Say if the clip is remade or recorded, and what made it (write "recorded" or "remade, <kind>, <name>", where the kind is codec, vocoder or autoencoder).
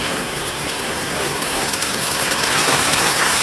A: remade, codec, SNAC